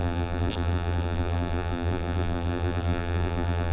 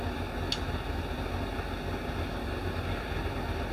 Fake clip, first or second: first